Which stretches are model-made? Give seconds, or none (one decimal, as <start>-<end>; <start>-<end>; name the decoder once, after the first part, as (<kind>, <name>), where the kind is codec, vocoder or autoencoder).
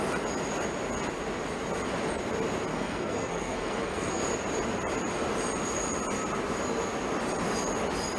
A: 2.7-4.2 (codec, SNAC)